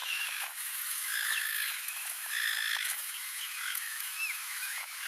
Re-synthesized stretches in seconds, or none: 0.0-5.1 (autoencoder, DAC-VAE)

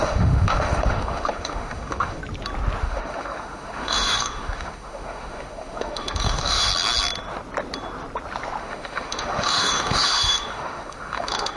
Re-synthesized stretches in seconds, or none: 0.0-2.2 (autoencoder, DAC-VAE); 2.8-6.7; 8.6-11.6

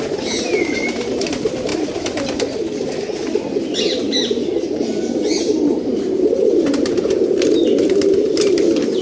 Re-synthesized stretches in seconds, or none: none

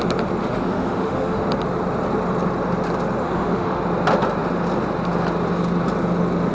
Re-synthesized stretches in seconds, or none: 0.4-1.4 (autoencoder, DAC-VAE); 3.2-3.8

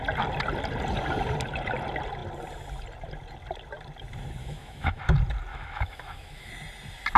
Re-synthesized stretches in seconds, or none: 4.4-5.0 (autoencoder, DAC-VAE); 5.5-6.5

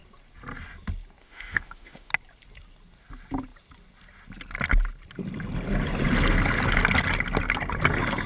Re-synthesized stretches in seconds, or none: 1.2-2.1 (autoencoder, DAC-VAE)